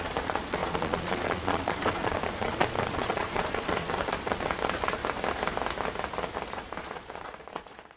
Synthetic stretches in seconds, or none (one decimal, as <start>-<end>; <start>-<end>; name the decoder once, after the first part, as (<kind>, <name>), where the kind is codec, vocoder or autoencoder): 0.0-5.0 (vocoder, Vocos); 6.5-8.0